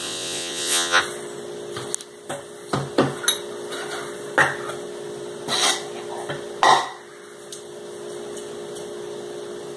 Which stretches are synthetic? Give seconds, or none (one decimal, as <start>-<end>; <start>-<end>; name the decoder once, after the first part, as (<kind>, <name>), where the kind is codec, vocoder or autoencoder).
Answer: 0.0-1.0 (vocoder, Vocos)